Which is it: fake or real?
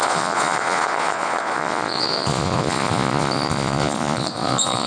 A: fake